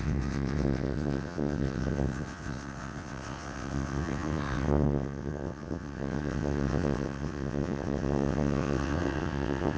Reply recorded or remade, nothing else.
remade